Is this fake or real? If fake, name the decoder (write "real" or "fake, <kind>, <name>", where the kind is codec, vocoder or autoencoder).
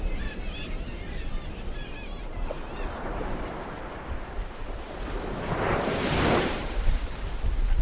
fake, vocoder, BigVGAN v2